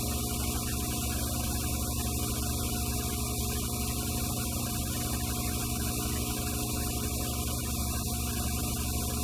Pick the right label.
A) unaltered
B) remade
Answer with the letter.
A